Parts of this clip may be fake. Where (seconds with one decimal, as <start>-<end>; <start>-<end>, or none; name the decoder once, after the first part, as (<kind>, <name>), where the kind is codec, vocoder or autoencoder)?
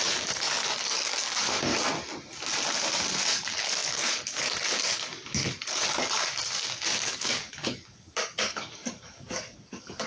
0.0-1.7 (codec, DAC); 3.2-10.1